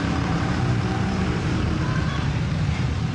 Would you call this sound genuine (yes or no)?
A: no